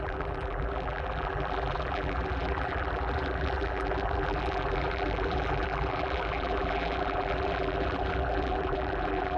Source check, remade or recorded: remade